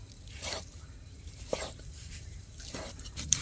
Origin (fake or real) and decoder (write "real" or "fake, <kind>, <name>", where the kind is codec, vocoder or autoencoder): fake, vocoder, BigVGAN v2